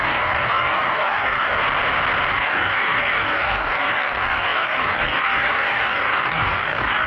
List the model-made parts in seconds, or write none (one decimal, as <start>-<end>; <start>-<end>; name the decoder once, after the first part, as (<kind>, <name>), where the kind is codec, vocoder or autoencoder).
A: 0.0-1.6 (codec, DAC); 2.3-7.1